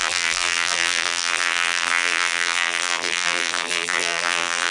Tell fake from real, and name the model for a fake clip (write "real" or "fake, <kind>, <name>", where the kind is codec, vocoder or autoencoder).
fake, vocoder, BigVGAN v2